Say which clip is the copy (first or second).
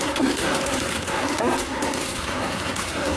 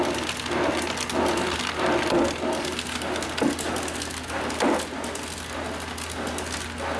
first